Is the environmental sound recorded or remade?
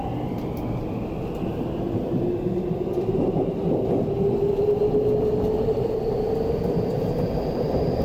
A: recorded